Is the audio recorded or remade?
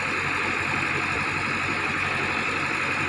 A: recorded